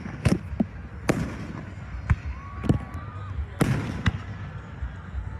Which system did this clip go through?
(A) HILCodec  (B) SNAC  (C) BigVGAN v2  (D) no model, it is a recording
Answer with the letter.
D